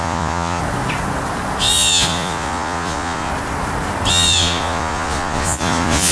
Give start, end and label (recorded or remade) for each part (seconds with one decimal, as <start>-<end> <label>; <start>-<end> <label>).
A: 0.0-0.6 remade; 0.6-1.6 recorded; 1.6-3.3 remade; 3.3-4.1 recorded; 4.1-6.1 remade